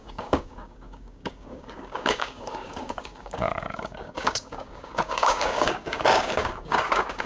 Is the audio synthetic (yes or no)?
yes